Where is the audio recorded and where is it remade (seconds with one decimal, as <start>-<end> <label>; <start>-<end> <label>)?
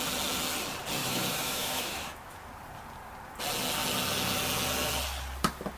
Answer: 0.0-1.0 recorded; 1.0-2.5 remade; 2.5-5.8 recorded